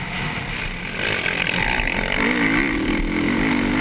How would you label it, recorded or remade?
recorded